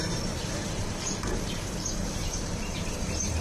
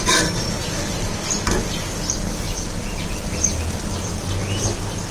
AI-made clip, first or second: first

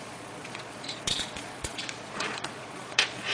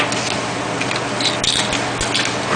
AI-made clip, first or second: first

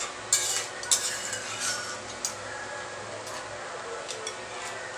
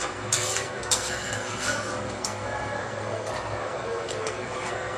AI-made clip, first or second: second